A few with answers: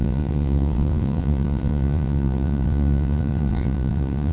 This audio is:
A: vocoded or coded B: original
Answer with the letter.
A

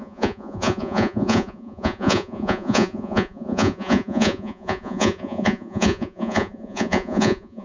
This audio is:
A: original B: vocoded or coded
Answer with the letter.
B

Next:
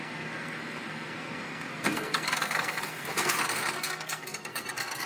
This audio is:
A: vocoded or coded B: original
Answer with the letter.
A